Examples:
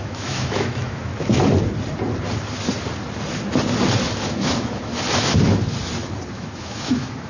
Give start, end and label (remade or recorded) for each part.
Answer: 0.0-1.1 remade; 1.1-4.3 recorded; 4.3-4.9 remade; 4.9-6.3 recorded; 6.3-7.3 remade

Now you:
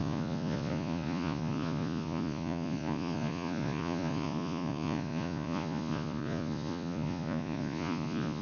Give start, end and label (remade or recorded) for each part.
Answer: 0.0-8.4 remade

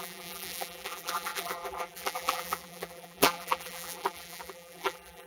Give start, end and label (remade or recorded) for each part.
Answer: 0.0-5.3 remade

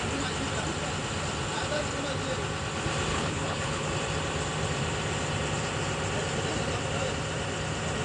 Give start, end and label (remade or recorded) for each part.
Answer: 0.0-3.1 recorded; 3.1-3.9 remade; 3.9-8.0 recorded

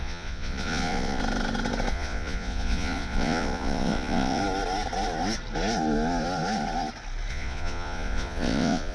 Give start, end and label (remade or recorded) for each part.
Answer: 0.0-1.2 remade; 1.2-1.9 recorded; 1.9-4.4 remade; 4.4-7.3 recorded; 7.3-8.9 remade